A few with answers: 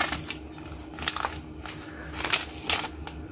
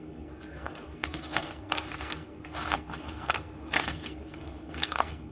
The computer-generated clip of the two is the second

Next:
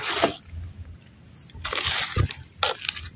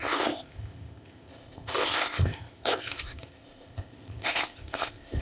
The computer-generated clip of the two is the second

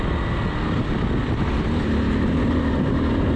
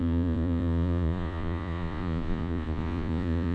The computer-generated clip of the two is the second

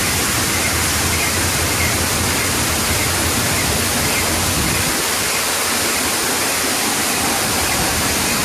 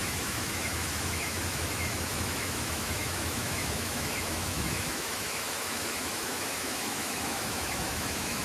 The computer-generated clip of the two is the second